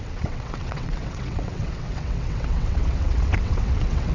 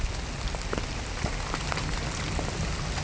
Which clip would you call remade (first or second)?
first